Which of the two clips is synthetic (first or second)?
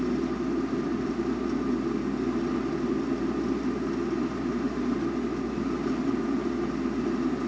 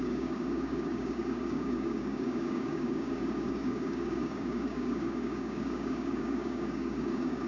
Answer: second